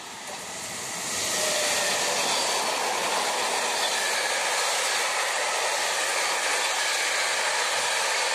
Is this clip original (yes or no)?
yes